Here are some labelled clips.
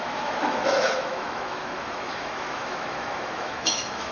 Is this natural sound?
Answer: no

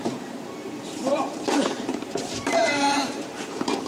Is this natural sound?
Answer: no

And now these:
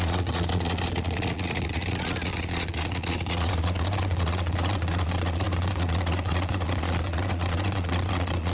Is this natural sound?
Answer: no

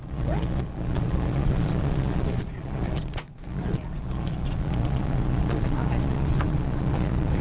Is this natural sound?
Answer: no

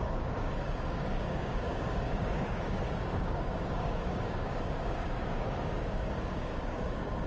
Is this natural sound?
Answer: no